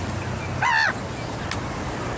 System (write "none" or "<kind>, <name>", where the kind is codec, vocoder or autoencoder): none